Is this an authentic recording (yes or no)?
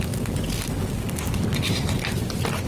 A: yes